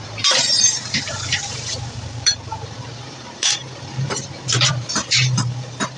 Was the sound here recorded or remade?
remade